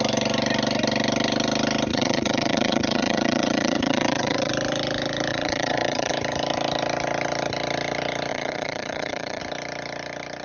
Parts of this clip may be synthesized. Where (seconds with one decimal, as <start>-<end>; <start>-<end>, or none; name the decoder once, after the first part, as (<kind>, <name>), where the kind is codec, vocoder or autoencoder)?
1.9-4.5 (vocoder, Vocos); 5.3-6.1; 8.3-9.4